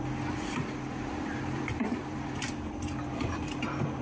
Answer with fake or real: fake